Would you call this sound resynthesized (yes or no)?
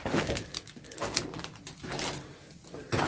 no